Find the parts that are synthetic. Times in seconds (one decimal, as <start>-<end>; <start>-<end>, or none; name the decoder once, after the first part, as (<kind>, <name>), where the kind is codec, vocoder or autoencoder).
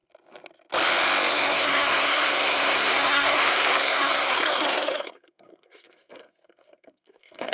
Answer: 1.3-7.5 (codec, SNAC)